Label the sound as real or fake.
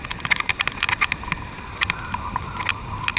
real